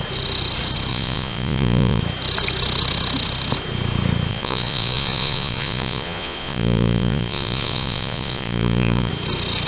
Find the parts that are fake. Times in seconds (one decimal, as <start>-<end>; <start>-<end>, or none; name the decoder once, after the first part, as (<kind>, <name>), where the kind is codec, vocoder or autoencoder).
0.9-2.0 (vocoder, Vocos); 4.3-9.1